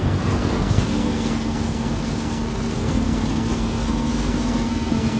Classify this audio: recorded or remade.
remade